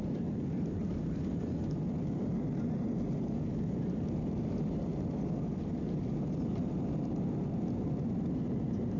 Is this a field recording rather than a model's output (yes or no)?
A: yes